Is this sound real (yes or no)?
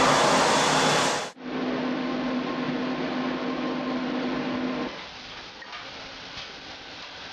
yes